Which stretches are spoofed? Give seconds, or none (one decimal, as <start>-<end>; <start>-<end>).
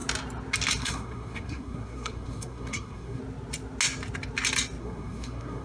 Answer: 0.8-3.2; 4.8-5.6